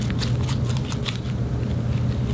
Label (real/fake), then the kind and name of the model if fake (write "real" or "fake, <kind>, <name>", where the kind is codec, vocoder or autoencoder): real